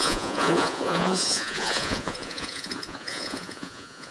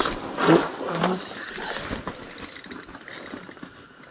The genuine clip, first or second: second